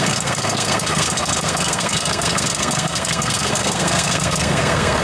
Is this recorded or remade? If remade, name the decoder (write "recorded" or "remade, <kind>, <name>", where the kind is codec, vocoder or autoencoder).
remade, codec, SNAC